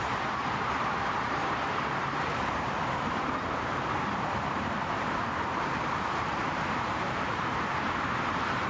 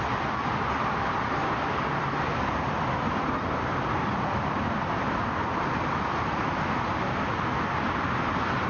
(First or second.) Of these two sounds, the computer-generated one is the first